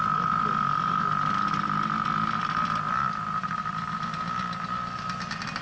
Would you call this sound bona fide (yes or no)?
yes